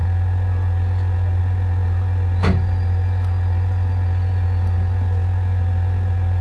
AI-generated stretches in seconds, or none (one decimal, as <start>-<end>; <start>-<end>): none